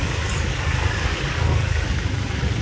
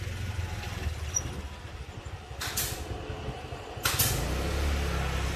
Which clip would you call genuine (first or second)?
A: second